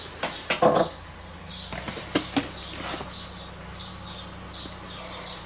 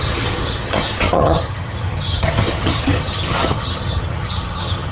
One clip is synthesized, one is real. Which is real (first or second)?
first